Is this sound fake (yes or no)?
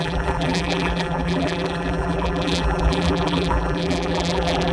yes